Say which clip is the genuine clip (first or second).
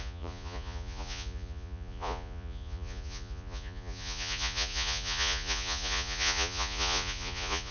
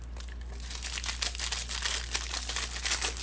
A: second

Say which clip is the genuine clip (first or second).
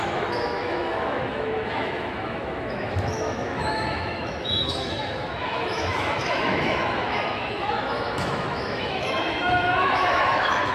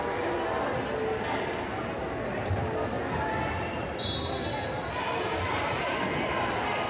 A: second